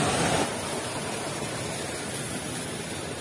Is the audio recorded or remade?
recorded